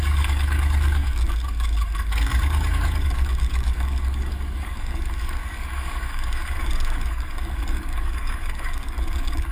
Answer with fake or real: fake